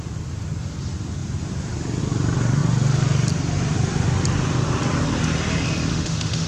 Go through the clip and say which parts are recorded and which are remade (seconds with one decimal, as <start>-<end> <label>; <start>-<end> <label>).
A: 0.0-5.9 recorded; 5.9-6.5 remade